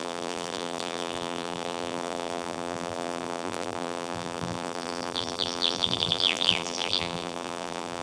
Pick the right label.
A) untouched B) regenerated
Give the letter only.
B